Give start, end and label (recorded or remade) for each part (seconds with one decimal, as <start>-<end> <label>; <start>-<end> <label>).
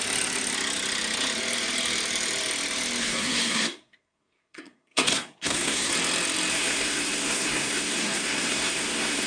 0.0-3.0 recorded; 3.0-5.9 remade; 5.9-6.5 recorded; 6.5-9.3 remade